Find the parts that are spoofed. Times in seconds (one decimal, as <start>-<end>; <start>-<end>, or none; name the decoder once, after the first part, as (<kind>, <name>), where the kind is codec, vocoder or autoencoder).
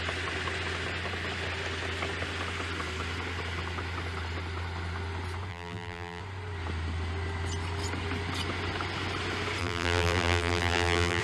5.5-6.2 (vocoder, BigVGAN v2); 9.6-11.2